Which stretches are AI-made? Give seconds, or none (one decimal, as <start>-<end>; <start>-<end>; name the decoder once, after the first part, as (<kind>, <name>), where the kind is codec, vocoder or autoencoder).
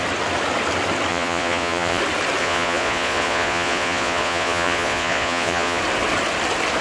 1.1-2.0 (vocoder, Vocos); 2.4-5.8